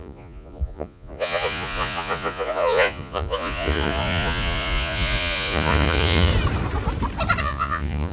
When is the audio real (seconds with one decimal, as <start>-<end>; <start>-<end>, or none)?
6.3-7.4

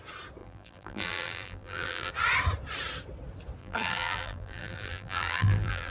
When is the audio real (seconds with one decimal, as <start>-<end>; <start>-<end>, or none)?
0.0-0.4; 2.1-3.6

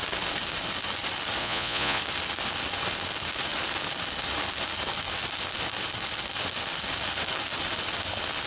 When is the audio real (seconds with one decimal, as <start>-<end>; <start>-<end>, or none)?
0.0-1.4; 2.0-8.5

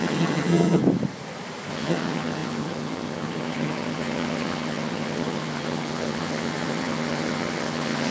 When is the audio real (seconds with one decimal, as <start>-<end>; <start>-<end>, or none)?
0.8-1.7

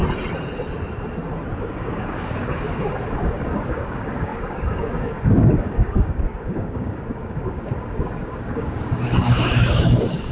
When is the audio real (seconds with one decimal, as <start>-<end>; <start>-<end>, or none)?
0.0-1.6

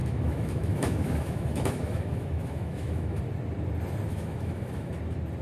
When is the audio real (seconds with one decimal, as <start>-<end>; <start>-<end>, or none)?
3.2-4.1; 4.9-5.4

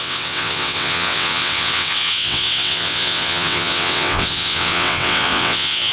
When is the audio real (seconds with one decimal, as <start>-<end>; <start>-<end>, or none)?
none

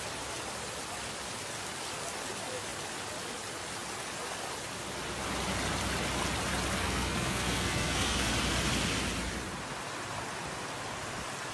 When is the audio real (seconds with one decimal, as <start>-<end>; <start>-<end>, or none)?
0.0-6.8; 8.3-11.5